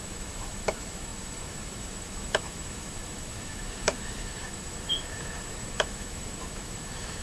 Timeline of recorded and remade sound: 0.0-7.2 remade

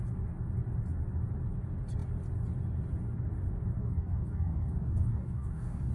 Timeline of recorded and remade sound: 0.0-3.8 recorded; 3.8-5.9 remade